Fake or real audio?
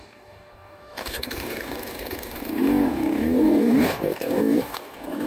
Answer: fake